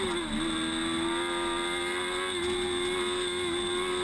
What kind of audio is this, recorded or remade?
recorded